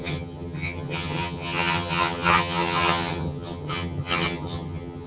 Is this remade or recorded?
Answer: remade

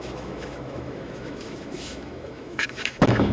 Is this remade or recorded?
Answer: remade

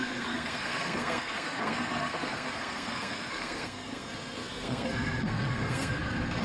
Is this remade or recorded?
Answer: remade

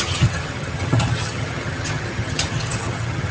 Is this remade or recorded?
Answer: remade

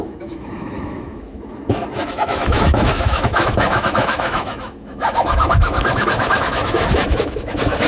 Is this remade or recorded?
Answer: remade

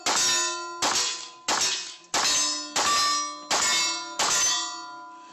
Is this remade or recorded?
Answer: recorded